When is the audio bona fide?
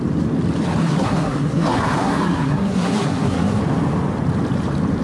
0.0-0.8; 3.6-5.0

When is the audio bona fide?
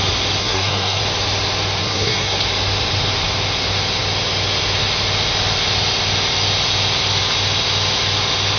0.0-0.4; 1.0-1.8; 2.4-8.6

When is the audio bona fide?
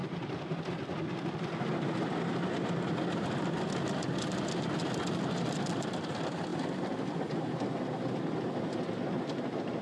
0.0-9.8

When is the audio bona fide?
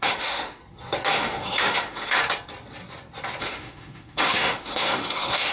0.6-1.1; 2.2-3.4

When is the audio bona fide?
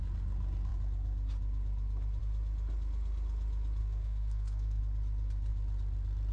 0.0-3.8; 4.8-6.3